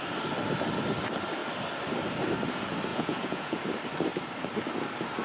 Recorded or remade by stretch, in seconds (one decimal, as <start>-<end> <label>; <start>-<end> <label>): 0.0-2.9 recorded; 2.9-3.6 remade; 3.6-5.2 recorded